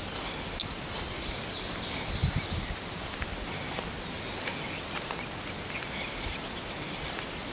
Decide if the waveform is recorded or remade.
recorded